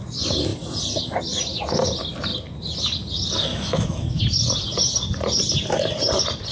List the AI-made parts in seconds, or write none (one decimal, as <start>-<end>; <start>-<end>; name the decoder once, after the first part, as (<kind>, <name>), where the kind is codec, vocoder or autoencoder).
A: 3.5-4.2 (autoencoder, DAC-VAE)